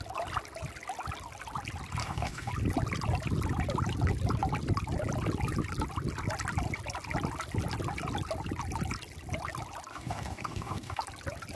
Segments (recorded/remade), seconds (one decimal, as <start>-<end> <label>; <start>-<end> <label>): 0.0-2.0 recorded; 2.0-2.5 remade; 2.5-9.9 recorded; 9.9-11.0 remade; 11.0-11.6 recorded